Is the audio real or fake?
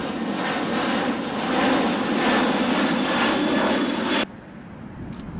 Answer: real